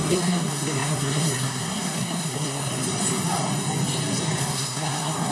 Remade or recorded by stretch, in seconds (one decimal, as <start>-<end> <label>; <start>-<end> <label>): 0.0-2.7 remade; 2.7-4.4 recorded; 4.4-5.3 remade